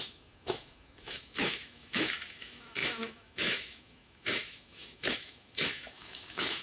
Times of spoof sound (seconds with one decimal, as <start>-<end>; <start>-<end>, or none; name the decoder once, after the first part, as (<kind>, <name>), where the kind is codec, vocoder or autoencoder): 0.0-6.6 (autoencoder, DAC-VAE)